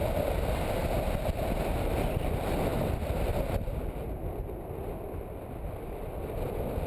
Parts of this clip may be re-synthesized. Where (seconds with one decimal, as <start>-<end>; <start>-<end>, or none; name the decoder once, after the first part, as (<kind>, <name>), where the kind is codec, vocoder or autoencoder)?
none